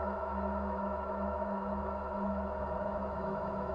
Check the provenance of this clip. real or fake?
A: fake